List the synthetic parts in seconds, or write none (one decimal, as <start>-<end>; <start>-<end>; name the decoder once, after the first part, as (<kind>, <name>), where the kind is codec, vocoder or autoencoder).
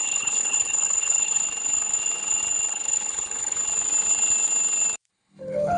0.0-1.4 (codec, HILCodec); 2.7-3.6; 5.1-5.8